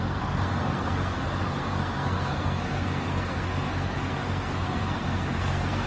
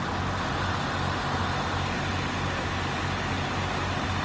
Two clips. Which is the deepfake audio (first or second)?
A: first